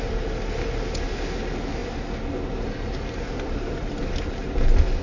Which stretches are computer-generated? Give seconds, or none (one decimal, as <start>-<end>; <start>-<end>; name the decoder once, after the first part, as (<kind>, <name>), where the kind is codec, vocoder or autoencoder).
none